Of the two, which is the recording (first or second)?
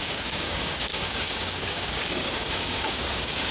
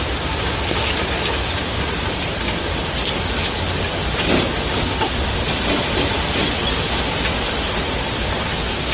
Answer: second